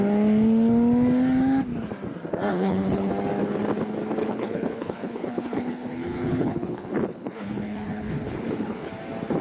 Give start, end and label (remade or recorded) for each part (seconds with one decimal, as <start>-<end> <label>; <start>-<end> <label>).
0.0-2.5 recorded; 2.5-3.1 remade; 3.1-4.2 recorded; 4.2-8.9 remade; 8.9-9.4 recorded